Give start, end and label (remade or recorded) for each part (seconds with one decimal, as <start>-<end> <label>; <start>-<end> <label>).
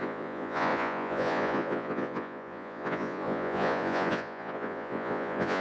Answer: 0.0-5.6 remade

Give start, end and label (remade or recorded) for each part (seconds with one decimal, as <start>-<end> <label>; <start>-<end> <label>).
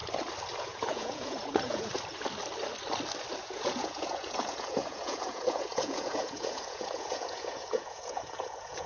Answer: 0.0-0.6 recorded; 0.6-1.9 remade; 1.9-3.4 recorded; 3.4-8.9 remade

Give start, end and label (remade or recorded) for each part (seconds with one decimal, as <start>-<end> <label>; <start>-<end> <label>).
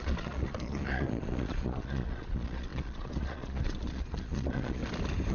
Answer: 0.0-4.8 remade; 4.8-5.3 recorded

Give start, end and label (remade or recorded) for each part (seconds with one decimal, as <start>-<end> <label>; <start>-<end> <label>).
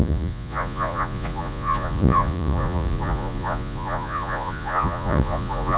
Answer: 0.0-5.8 remade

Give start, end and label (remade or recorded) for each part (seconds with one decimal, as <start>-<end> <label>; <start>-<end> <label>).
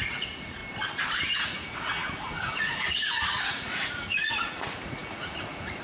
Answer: 0.0-0.6 remade; 0.6-1.4 recorded; 1.4-5.8 remade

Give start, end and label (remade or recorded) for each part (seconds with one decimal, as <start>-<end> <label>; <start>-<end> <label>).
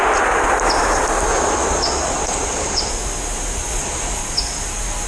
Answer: 0.0-1.3 recorded; 1.3-2.9 remade; 2.9-3.7 recorded; 3.7-4.2 remade; 4.2-5.1 recorded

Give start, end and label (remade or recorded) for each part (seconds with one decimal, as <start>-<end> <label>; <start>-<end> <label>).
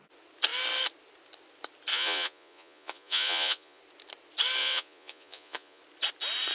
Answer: 0.0-1.9 recorded; 1.9-3.8 remade; 3.8-4.6 recorded; 4.6-5.8 remade; 5.8-6.5 recorded